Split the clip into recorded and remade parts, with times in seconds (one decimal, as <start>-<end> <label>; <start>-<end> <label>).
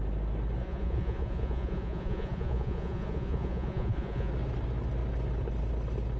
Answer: 0.0-0.6 recorded; 0.6-4.3 remade; 4.3-6.2 recorded